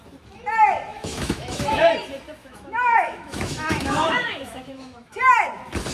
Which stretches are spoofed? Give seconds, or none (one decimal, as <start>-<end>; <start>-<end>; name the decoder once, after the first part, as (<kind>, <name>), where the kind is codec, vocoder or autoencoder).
0.9-1.9 (autoencoder, DAC-VAE); 2.4-5.2